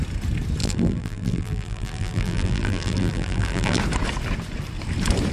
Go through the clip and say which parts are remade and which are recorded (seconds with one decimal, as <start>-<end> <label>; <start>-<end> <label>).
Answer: 0.0-0.6 recorded; 0.6-3.8 remade; 3.8-5.3 recorded